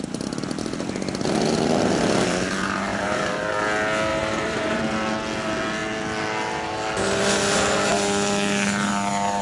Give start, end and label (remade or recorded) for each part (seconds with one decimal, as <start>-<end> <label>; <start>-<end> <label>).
0.0-2.9 recorded; 2.9-3.5 remade; 3.5-4.1 recorded; 4.1-4.8 remade; 4.8-9.4 recorded